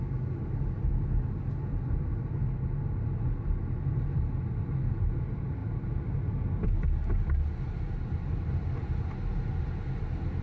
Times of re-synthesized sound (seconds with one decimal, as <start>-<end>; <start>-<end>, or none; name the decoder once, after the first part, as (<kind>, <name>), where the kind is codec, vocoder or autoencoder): none